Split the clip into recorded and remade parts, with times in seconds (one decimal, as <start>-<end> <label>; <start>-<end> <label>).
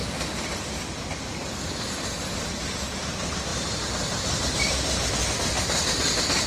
0.0-6.5 recorded